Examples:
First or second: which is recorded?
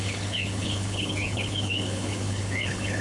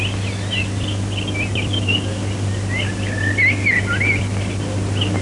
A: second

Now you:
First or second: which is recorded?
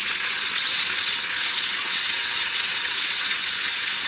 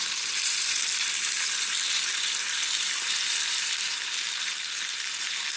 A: second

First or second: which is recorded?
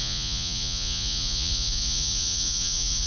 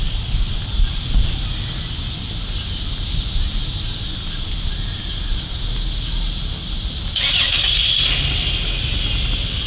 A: second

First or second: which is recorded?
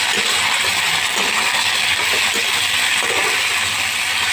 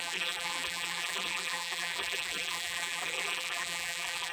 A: first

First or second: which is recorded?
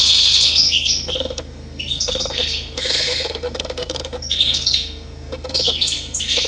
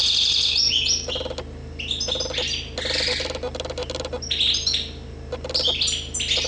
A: second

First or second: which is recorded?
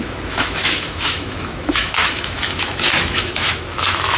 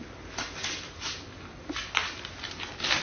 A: second